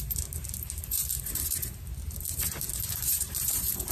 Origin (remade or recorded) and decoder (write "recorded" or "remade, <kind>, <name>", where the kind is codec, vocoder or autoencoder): remade, vocoder, BigVGAN v2